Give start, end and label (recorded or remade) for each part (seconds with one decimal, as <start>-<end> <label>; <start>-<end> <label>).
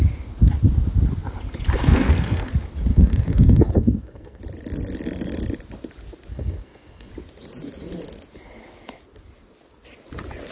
0.0-1.8 recorded; 1.8-2.5 remade; 2.5-2.9 recorded; 2.9-4.4 remade; 4.4-6.3 recorded; 6.3-7.1 remade; 7.1-10.5 recorded